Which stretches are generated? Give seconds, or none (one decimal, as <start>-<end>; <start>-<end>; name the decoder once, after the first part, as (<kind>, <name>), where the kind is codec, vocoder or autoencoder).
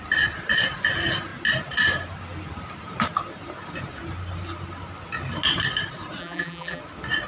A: 6.2-6.8 (vocoder, BigVGAN v2)